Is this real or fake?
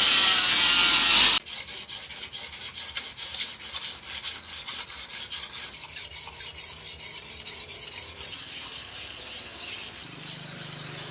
real